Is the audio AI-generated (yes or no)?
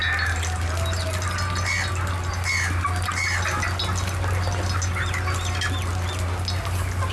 no